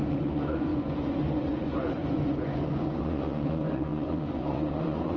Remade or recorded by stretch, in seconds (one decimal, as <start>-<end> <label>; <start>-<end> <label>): 0.0-5.2 remade